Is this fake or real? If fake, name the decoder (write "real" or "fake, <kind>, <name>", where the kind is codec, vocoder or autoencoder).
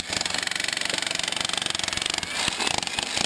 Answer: real